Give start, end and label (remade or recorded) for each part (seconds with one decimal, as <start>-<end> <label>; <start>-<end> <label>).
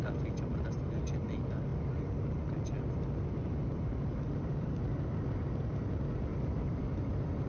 0.0-6.3 recorded; 6.3-7.5 remade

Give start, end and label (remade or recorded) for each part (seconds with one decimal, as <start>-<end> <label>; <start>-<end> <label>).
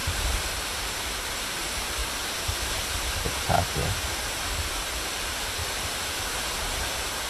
0.0-2.0 remade; 2.0-5.9 recorded; 5.9-7.3 remade